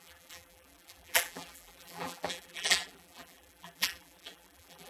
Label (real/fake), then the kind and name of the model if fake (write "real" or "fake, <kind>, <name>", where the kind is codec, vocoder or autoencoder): fake, vocoder, BigVGAN v2